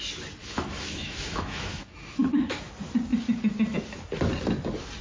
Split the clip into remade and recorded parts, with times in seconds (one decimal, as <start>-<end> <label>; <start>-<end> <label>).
0.0-0.4 recorded; 0.4-2.7 remade; 2.7-5.0 recorded